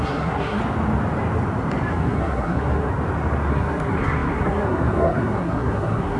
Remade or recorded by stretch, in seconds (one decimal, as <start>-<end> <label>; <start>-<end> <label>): 0.0-0.6 remade; 0.6-1.9 recorded; 1.9-2.9 remade; 2.9-3.5 recorded; 3.5-6.2 remade